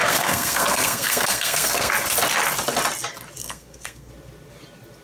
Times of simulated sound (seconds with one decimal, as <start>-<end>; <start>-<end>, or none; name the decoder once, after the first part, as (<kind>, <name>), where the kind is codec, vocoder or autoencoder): 0.0-1.9 (codec, SNAC); 3.4-4.1